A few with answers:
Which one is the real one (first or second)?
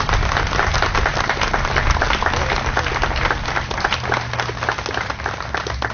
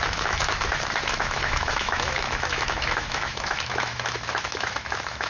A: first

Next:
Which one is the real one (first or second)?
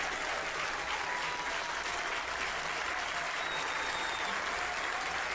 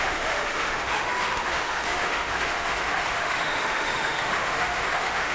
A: first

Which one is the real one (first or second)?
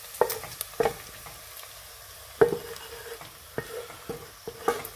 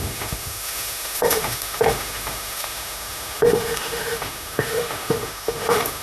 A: first